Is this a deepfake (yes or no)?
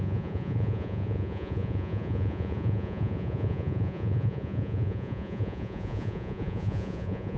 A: yes